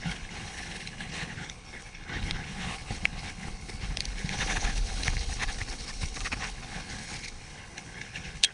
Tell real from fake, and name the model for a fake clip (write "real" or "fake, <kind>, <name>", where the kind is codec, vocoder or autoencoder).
fake, codec, HILCodec